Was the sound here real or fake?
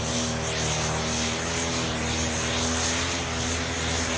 real